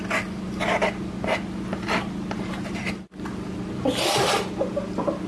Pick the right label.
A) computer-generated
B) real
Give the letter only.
B